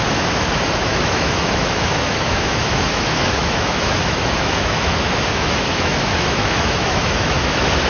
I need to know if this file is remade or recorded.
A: remade